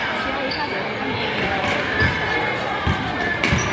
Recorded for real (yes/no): yes